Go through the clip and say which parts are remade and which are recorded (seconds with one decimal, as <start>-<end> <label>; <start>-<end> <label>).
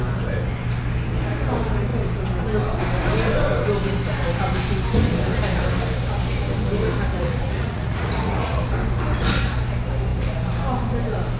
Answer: 0.0-7.1 recorded; 7.1-8.6 remade; 8.6-11.4 recorded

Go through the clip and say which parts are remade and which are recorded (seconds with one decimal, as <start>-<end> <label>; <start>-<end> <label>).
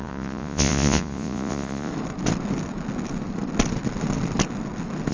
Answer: 0.0-1.9 remade; 1.9-5.1 recorded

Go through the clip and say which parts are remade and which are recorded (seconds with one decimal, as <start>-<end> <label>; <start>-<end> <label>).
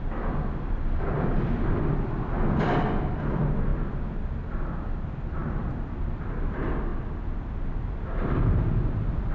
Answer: 0.0-6.9 remade; 6.9-9.3 recorded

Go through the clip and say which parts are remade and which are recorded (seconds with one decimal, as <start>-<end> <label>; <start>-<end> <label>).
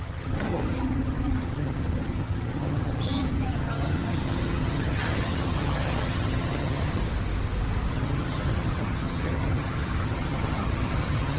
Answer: 0.0-7.0 remade; 7.0-7.9 recorded; 7.9-11.4 remade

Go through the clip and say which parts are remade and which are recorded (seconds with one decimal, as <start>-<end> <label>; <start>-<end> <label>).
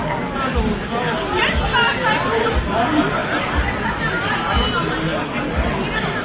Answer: 0.0-6.2 recorded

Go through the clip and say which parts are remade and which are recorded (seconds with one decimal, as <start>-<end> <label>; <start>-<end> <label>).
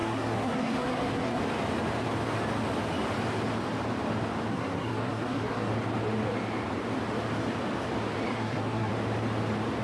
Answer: 0.0-1.4 remade; 1.4-4.5 recorded; 4.5-5.7 remade; 5.7-8.3 recorded; 8.3-8.9 remade; 8.9-9.8 recorded